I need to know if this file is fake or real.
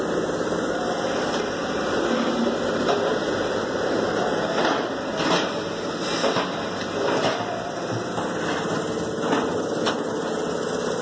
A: real